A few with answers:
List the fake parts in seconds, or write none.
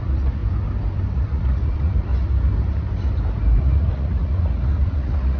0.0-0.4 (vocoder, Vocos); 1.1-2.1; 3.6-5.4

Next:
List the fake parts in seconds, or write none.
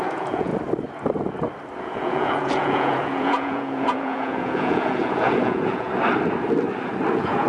0.0-0.5 (vocoder, Vocos); 1.8-5.9; 7.1-7.5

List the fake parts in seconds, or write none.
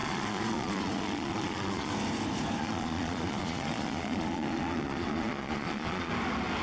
0.0-1.9 (vocoder, Vocos); 2.6-6.1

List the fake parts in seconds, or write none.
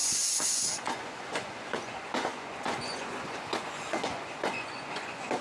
0.0-5.4 (vocoder, Vocos)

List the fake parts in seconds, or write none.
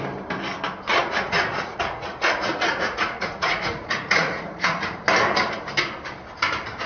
0.9-5.0 (vocoder, Vocos)